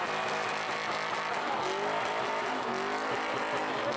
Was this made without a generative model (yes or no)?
yes